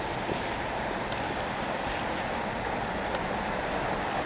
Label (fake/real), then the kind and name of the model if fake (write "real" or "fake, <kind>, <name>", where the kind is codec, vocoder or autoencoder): real